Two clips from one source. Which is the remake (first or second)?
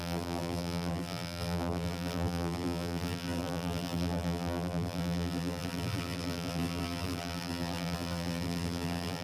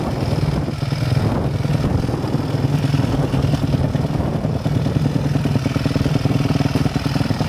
first